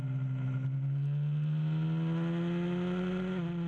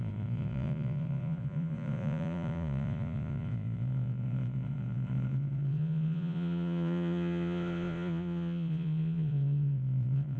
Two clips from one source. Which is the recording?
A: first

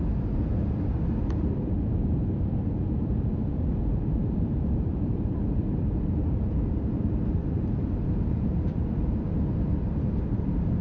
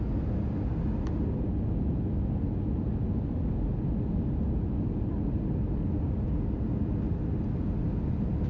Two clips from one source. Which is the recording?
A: second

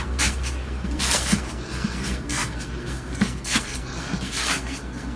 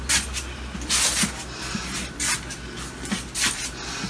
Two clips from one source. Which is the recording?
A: second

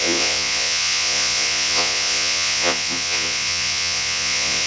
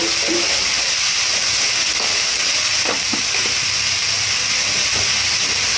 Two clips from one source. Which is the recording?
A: second